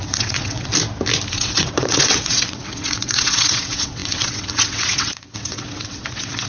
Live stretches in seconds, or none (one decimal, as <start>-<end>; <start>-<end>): 0.7-1.3